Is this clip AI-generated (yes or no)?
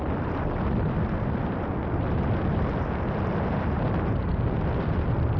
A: no